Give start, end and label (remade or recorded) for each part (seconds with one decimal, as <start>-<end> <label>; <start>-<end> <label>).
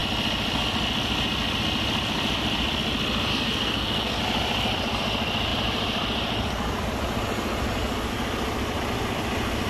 0.0-3.3 recorded; 3.3-4.2 remade; 4.2-9.7 recorded